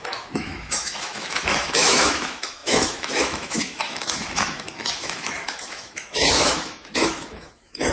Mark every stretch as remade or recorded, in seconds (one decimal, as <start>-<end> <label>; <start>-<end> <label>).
0.0-7.9 remade